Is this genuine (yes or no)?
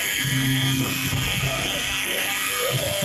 no